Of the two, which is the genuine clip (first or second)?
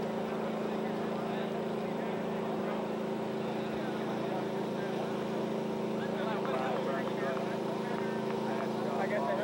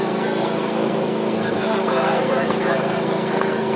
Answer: first